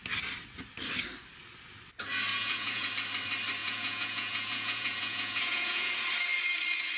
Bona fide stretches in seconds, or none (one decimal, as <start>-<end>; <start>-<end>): 0.0-2.3; 2.9-3.6; 5.9-7.0